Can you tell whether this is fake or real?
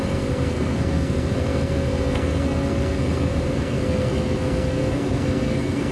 fake